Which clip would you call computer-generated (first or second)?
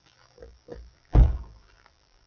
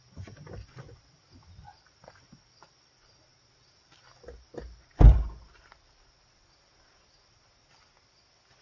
first